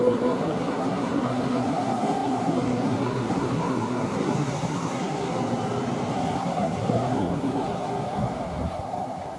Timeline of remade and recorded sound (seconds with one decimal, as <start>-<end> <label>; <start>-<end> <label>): 0.0-5.3 remade; 5.3-6.1 recorded; 6.1-9.4 remade